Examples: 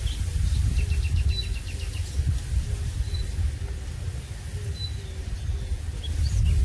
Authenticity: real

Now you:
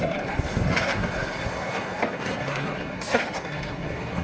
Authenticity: fake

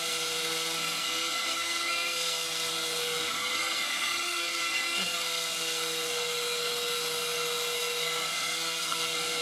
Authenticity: fake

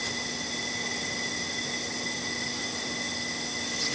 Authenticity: real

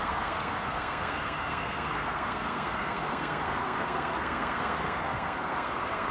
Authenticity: fake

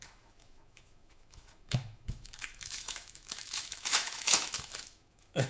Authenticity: fake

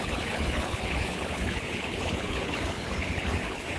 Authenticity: fake